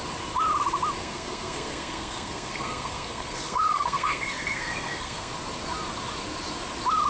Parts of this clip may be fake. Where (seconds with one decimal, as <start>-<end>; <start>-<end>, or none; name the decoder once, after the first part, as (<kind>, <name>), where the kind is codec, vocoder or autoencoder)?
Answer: 1.0-5.3 (codec, SNAC)